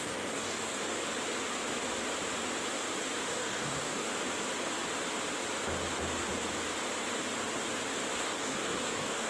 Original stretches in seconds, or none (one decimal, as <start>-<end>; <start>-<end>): 0.8-3.2; 4.1-8.2